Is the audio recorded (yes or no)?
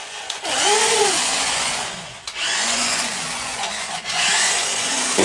no